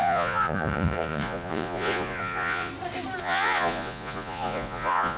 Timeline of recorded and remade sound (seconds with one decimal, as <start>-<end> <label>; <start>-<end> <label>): 0.0-2.7 remade; 2.7-3.2 recorded; 3.2-5.2 remade

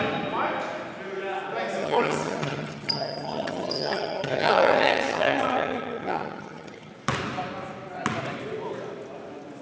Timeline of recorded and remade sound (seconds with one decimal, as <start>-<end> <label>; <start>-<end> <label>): 0.0-1.8 recorded; 1.8-6.9 remade; 6.9-9.6 recorded

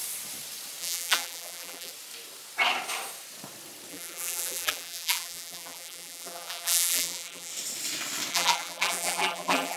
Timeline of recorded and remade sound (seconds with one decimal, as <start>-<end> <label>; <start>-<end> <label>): 0.0-0.8 recorded; 0.8-1.9 remade; 1.9-3.9 recorded; 3.9-7.5 remade; 7.5-8.3 recorded; 8.3-9.8 remade

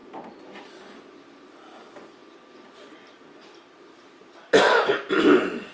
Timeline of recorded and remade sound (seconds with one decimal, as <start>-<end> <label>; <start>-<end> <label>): 0.0-5.7 recorded

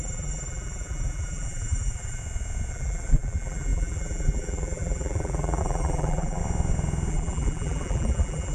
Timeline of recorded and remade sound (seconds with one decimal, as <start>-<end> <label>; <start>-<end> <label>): 0.0-2.2 remade; 2.2-2.7 recorded; 2.7-6.4 remade; 6.4-7.1 recorded; 7.1-8.5 remade

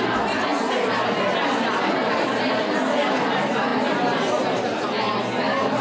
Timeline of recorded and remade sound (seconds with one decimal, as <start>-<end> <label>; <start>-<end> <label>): 0.0-5.8 recorded